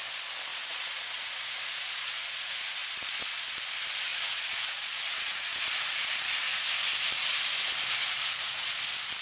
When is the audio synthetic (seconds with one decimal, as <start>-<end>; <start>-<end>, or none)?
0.5-3.3; 4.1-6.7; 8.0-8.7